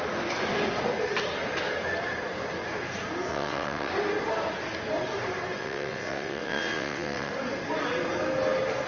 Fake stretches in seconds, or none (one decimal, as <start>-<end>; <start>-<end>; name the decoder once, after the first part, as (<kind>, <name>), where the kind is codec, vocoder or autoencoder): 3.3-3.9 (vocoder, WaveNeXt); 5.6-7.3

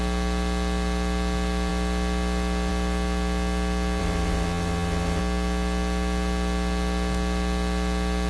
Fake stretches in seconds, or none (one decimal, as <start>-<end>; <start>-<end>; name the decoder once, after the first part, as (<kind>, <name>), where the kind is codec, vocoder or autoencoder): 4.0-5.2 (vocoder, WaveNeXt)

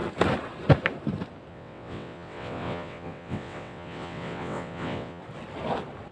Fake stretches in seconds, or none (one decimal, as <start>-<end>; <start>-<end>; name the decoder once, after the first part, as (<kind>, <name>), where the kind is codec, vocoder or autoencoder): 1.5-5.2 (vocoder, WaveNeXt)

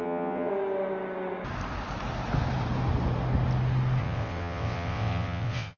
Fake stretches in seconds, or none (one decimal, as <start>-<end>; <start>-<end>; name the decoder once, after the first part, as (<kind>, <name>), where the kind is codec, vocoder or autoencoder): 0.0-0.5 (vocoder, WaveNeXt); 4.0-5.8

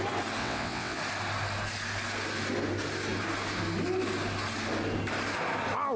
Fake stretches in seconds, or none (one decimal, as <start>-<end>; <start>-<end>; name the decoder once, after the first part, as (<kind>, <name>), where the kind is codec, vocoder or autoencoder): 0.4-1.0 (vocoder, WaveNeXt)

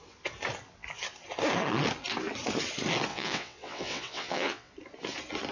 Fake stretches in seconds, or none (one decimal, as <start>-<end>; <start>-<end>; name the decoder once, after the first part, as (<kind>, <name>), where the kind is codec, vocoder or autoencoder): 3.1-4.7 (vocoder, WaveNeXt)

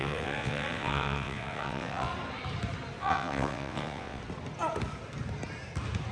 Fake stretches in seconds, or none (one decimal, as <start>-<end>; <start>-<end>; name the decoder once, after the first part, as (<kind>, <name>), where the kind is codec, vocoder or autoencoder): 0.0-2.1 (vocoder, WaveNeXt); 3.0-4.2